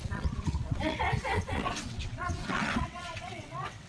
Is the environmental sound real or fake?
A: fake